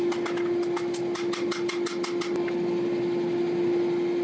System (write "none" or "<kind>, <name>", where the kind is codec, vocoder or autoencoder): none